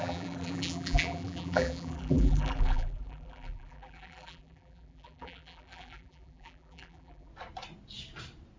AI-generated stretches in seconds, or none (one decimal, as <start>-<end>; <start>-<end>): 0.0-7.3